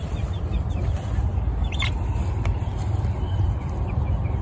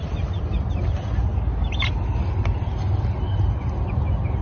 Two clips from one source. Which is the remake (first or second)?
first